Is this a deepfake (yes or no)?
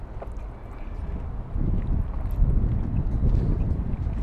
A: no